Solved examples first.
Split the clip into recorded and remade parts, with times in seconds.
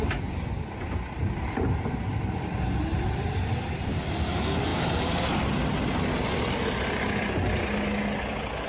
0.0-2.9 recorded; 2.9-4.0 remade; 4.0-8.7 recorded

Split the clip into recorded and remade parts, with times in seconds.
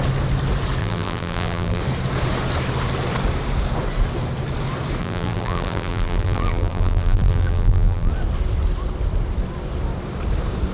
0.0-0.8 recorded; 0.8-1.8 remade; 1.8-5.0 recorded; 5.0-8.1 remade; 8.1-10.7 recorded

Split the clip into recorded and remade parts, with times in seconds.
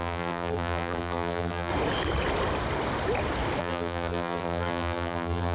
0.0-1.7 remade; 1.7-3.6 recorded; 3.6-5.5 remade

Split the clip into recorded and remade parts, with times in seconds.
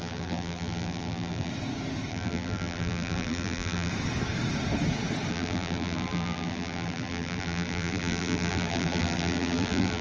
0.0-1.5 remade; 1.5-2.1 recorded; 2.1-3.9 remade; 3.9-5.3 recorded; 5.3-10.0 remade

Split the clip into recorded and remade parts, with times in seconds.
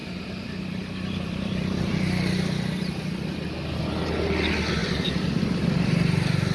0.0-2.0 remade; 2.0-4.8 recorded; 4.8-5.4 remade; 5.4-6.5 recorded